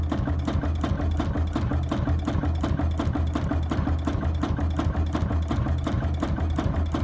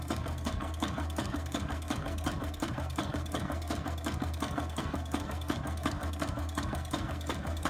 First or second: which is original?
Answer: first